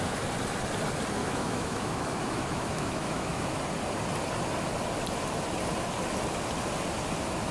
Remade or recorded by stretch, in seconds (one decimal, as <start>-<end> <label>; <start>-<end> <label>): 0.0-1.2 recorded; 1.2-3.6 remade; 3.6-7.5 recorded